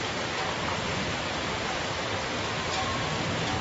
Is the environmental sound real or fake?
real